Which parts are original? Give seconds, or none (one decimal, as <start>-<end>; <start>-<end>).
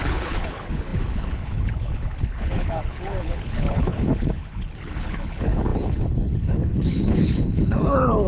none